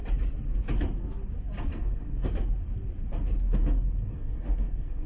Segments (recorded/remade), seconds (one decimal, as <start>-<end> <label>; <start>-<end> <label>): 0.0-1.7 recorded; 1.7-2.3 remade; 2.3-3.6 recorded; 3.6-5.1 remade